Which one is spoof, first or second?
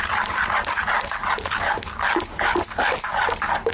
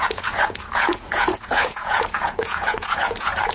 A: second